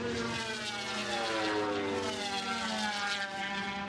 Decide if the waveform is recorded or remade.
recorded